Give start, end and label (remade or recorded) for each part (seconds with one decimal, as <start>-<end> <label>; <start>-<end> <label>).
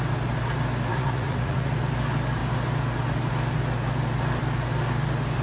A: 0.0-0.9 recorded; 0.9-1.7 remade; 1.7-5.4 recorded